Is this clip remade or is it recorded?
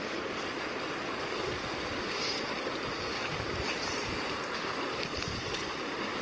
recorded